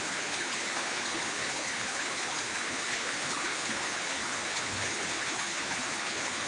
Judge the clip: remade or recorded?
remade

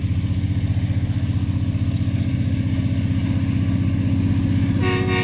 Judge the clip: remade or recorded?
recorded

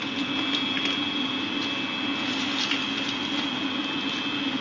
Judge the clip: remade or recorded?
recorded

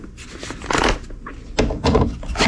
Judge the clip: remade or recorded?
recorded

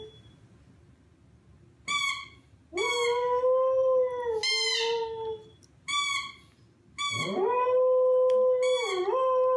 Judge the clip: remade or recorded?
recorded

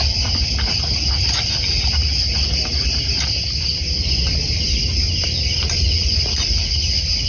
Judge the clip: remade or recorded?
recorded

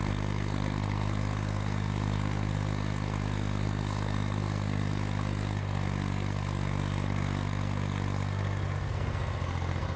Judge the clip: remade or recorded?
remade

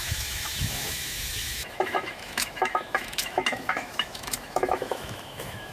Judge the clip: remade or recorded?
remade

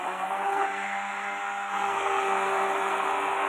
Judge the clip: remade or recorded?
remade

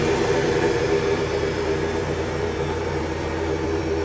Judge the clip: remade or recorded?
remade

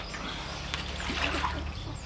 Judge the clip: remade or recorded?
recorded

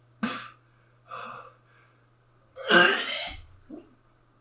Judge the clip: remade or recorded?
recorded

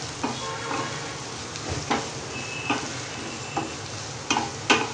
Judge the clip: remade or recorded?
recorded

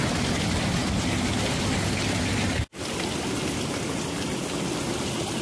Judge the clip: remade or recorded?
recorded